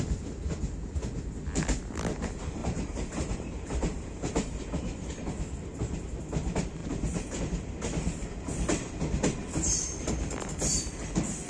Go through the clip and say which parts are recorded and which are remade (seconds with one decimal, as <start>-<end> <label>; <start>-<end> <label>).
0.0-2.6 recorded; 2.6-4.7 remade; 4.7-6.8 recorded; 6.8-7.4 remade; 7.4-11.5 recorded